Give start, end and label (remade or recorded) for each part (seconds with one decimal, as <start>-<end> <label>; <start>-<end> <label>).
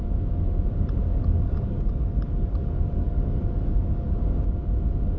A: 0.0-1.1 recorded; 1.1-4.2 remade; 4.2-5.2 recorded